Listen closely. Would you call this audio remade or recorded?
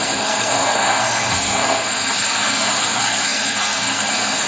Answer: remade